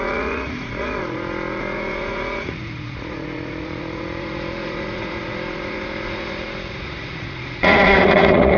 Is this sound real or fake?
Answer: fake